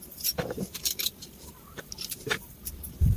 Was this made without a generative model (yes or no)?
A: no